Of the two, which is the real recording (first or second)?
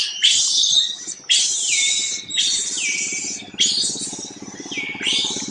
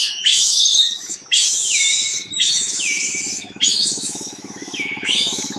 first